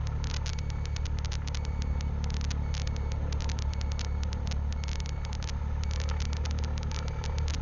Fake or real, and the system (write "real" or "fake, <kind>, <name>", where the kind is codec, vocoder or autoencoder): real